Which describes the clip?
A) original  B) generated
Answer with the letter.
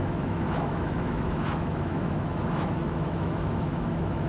B